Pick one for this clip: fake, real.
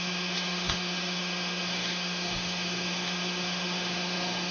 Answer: fake